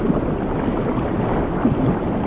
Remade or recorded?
recorded